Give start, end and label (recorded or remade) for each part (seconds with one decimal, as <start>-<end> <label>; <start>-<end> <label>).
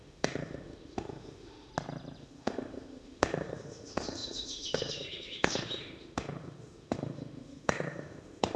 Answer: 0.0-1.7 remade; 1.7-2.2 recorded; 2.2-8.6 remade